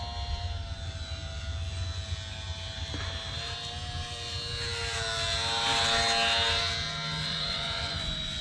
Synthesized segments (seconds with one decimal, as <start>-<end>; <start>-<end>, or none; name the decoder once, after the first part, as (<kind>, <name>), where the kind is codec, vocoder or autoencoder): 7.2-8.4 (vocoder, Vocos)